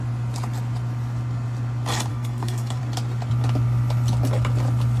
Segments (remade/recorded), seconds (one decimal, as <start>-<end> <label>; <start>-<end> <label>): 0.0-2.1 recorded; 2.1-2.8 remade; 2.8-5.0 recorded